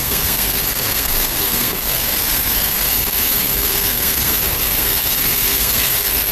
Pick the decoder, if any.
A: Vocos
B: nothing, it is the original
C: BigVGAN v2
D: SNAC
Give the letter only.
D